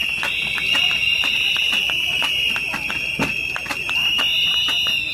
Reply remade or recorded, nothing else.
recorded